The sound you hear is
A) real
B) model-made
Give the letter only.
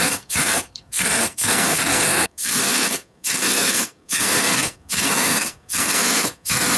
B